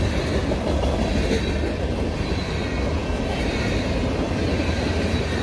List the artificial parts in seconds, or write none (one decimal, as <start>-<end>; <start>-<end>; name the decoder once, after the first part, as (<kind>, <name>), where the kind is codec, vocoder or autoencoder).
none